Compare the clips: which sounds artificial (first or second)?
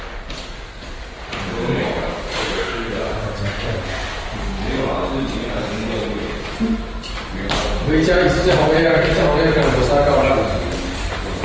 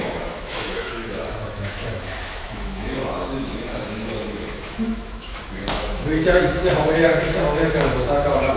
second